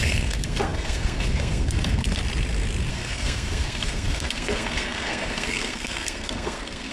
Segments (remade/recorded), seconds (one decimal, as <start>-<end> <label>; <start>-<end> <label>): 0.0-2.2 remade; 2.2-2.9 recorded; 2.9-6.9 remade